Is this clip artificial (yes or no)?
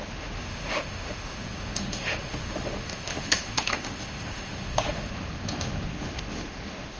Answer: yes